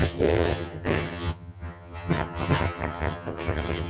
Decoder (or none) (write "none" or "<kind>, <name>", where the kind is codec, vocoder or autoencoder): vocoder, HiFi-GAN